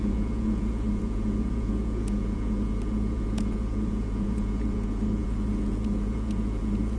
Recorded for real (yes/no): no